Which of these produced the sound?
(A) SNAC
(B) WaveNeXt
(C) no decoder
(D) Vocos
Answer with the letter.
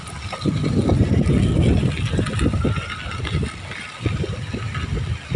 C